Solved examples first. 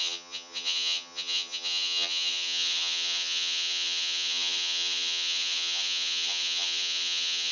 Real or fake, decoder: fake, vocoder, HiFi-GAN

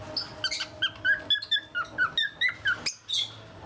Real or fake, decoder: real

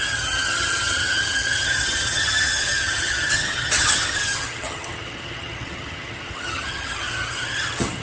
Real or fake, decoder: fake, vocoder, HiFi-GAN